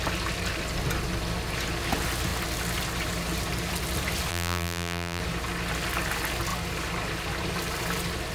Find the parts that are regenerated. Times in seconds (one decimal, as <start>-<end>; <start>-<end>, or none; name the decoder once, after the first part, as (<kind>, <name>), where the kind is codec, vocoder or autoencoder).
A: 4.3-5.2 (vocoder, BigVGAN v2)